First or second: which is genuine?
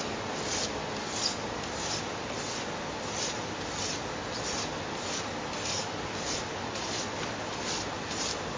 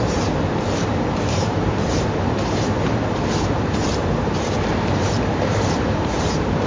first